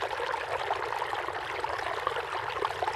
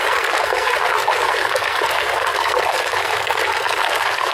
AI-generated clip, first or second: second